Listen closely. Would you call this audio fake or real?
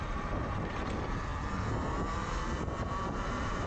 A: fake